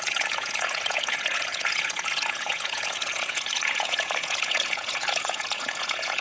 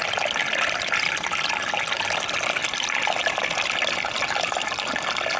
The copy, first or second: first